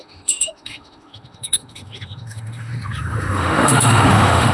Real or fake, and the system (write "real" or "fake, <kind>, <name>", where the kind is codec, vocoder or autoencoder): fake, autoencoder, DAC-VAE